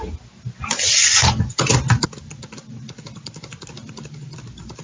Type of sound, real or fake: real